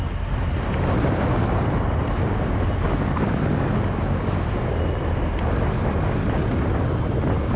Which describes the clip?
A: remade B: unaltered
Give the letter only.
B